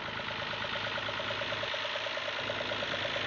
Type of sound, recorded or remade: recorded